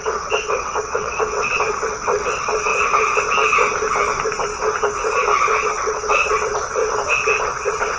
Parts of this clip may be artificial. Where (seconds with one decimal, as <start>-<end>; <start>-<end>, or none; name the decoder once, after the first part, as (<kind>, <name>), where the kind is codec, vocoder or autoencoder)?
0.0-2.7 (vocoder, WaveNeXt); 5.7-6.8; 7.4-8.0